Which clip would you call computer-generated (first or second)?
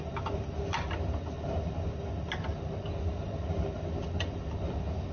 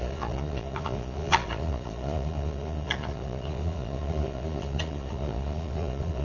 second